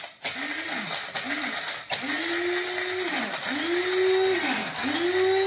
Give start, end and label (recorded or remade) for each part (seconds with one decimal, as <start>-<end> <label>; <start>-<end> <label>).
0.0-5.5 recorded